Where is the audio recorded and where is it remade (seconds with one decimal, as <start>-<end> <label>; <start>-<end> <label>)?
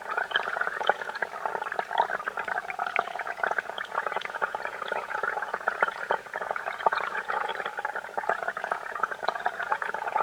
0.0-1.2 remade; 1.2-3.0 recorded; 3.0-7.5 remade; 7.5-8.2 recorded; 8.2-10.2 remade